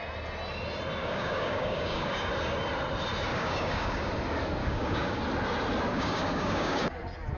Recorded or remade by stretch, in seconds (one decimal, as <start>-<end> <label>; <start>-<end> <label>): 0.0-1.0 recorded; 1.0-2.3 remade; 2.3-3.3 recorded; 3.3-4.1 remade; 4.1-4.6 recorded; 4.6-5.2 remade; 5.2-5.9 recorded; 5.9-6.9 remade; 6.9-7.4 recorded